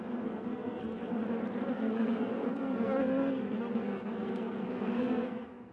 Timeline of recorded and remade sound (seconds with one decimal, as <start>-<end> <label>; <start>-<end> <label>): 0.0-1.2 remade; 1.2-1.7 recorded; 1.7-5.7 remade